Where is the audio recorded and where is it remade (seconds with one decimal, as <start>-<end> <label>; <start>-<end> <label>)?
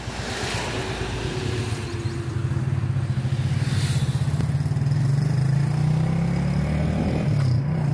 0.0-7.9 recorded